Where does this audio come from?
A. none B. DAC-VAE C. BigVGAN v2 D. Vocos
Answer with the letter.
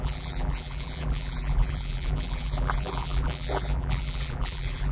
C